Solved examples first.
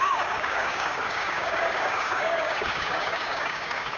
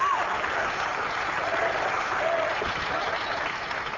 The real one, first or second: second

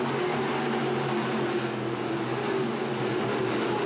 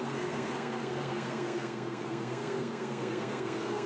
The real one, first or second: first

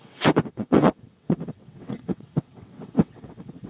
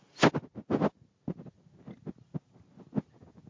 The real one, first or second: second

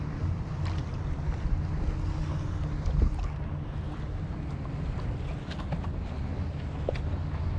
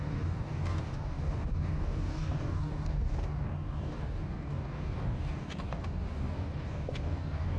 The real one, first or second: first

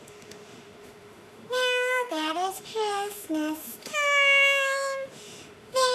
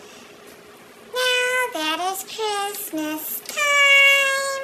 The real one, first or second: second